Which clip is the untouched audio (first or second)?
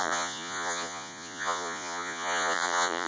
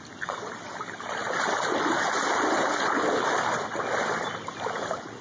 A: second